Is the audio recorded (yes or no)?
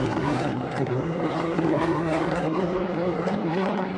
no